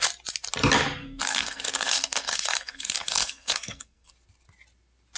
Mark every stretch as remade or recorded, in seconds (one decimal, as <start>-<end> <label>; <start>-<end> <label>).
0.0-1.0 recorded; 1.0-4.1 remade; 4.1-5.2 recorded